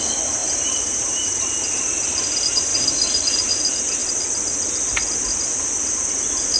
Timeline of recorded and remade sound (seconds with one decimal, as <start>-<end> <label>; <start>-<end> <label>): 0.0-0.4 recorded; 0.4-1.3 remade; 1.3-2.7 recorded; 2.7-3.4 remade; 3.4-6.6 recorded